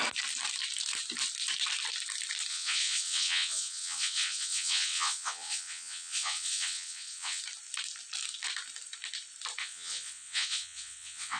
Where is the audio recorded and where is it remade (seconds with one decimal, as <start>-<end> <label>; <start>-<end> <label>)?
0.0-2.5 recorded; 2.5-7.4 remade; 7.4-9.6 recorded; 9.6-11.4 remade